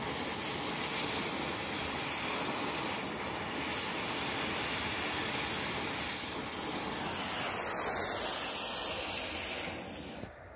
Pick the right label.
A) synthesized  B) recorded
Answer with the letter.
B